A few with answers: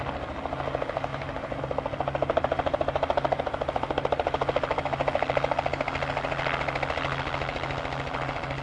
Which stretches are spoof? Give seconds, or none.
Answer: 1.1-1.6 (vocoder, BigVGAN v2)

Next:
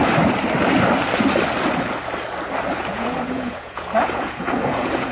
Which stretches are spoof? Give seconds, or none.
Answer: 2.8-5.1 (vocoder, Vocos)